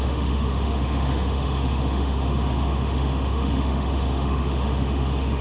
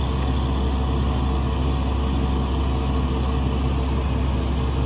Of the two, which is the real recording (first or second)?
second